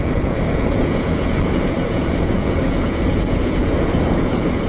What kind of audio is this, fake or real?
fake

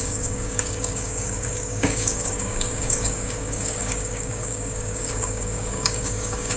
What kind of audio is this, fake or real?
fake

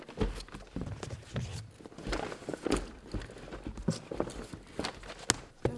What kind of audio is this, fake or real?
real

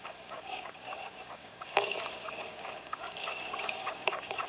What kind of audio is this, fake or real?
fake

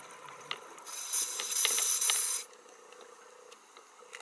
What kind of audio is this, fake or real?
real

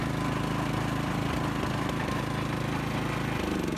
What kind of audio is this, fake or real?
real